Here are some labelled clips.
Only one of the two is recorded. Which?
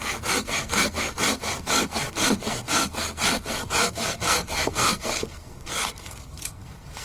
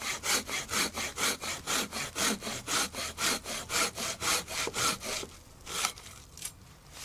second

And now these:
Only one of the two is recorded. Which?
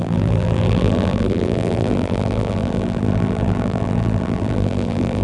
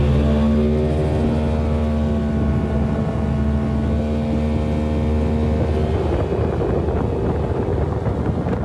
second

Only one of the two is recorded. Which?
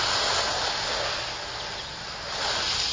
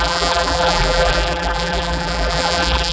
first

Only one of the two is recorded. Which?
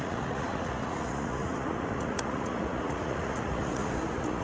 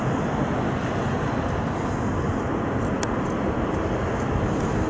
second